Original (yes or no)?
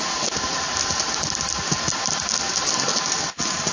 yes